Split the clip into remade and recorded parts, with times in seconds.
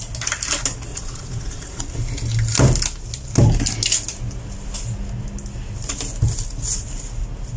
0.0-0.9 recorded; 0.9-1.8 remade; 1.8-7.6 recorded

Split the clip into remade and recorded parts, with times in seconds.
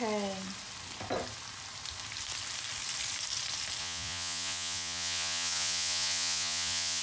0.0-3.8 recorded; 3.8-7.0 remade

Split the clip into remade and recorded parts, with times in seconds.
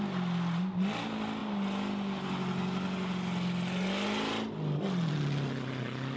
0.0-6.2 recorded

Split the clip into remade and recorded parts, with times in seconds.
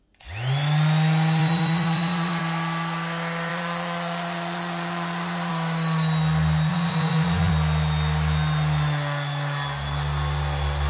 0.0-1.4 recorded; 1.4-2.4 remade; 2.4-3.5 recorded; 3.5-5.5 remade; 5.5-6.7 recorded; 6.7-7.5 remade; 7.5-10.9 recorded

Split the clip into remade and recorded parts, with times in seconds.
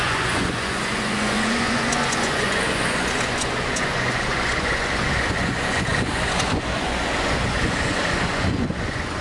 0.0-9.2 remade